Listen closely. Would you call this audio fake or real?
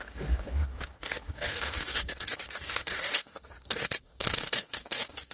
fake